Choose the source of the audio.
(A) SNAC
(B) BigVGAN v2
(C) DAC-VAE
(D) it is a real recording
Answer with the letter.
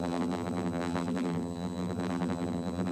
B